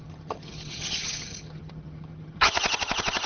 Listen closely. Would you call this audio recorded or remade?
remade